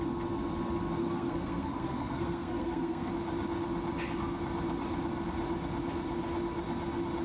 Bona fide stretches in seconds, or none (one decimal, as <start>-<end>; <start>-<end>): 0.0-1.0; 3.1-7.2